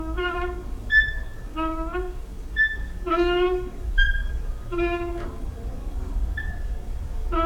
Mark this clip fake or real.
fake